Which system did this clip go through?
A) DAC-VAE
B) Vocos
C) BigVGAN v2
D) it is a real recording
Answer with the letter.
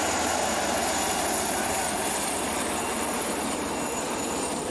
C